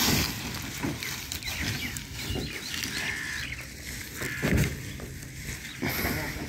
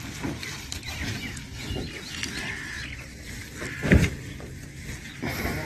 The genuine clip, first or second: first